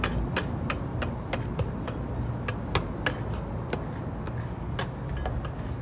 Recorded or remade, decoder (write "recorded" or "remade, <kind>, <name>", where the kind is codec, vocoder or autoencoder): recorded